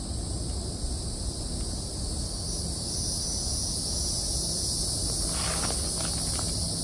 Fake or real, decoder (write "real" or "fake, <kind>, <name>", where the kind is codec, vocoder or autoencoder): real